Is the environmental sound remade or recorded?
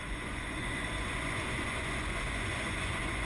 remade